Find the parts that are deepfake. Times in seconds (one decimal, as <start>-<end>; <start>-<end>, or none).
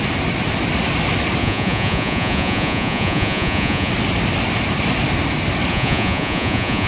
1.4-3.9; 5.7-6.9